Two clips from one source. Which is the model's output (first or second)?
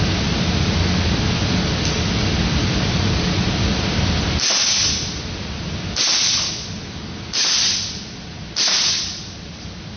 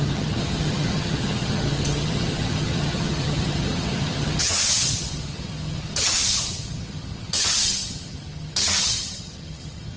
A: second